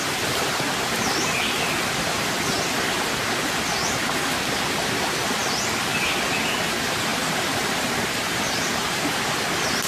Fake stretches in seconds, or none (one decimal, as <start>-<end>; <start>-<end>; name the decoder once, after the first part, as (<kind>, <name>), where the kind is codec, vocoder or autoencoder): 7.1-9.0 (vocoder, BigVGAN v2)